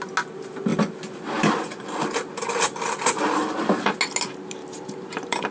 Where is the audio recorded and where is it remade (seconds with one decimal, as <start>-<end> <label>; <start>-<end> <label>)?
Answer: 0.0-0.7 recorded; 0.7-4.0 remade; 4.0-4.6 recorded; 4.6-5.5 remade